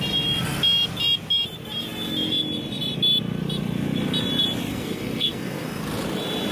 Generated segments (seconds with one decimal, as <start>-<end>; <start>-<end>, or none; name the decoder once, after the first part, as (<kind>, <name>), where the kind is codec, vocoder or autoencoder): 4.7-5.8 (codec, SNAC)